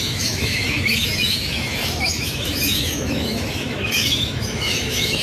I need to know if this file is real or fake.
fake